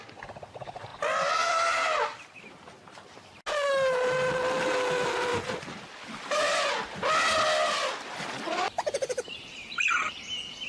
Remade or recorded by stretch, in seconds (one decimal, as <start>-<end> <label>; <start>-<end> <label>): 0.0-5.3 recorded; 5.3-6.7 remade; 6.7-10.7 recorded